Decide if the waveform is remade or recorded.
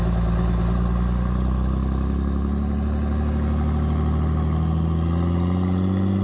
recorded